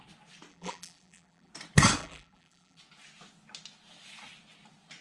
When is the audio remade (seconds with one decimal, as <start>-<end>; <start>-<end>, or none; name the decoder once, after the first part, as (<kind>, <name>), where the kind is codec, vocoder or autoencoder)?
0.5-1.5 (vocoder, BigVGAN v2); 2.0-2.8